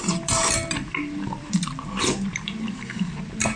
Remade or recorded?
remade